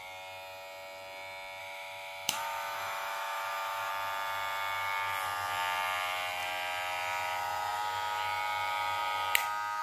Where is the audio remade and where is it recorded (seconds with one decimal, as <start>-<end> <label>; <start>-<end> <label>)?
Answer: 0.0-1.6 recorded; 1.6-3.9 remade; 3.9-9.8 recorded